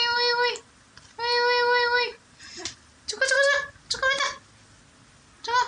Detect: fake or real real